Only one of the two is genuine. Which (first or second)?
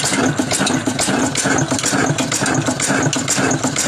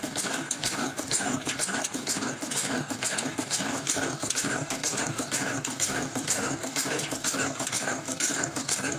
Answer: first